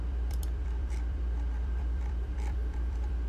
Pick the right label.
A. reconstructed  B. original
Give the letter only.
A